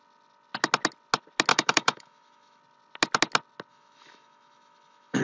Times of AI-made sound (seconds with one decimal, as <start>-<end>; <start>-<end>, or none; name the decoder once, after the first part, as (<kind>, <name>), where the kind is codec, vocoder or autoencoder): 1.5-2.6 (autoencoder, DAC-VAE); 3.7-5.2